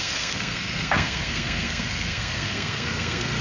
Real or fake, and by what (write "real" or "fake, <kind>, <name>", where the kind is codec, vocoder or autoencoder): fake, codec, SNAC